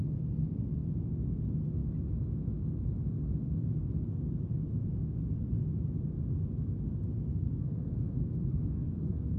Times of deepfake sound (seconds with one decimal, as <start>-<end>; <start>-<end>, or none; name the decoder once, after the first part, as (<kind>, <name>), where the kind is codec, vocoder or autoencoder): 7.3-9.4 (codec, SNAC)